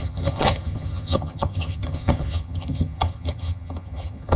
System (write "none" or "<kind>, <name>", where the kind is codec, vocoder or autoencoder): vocoder, HiFi-GAN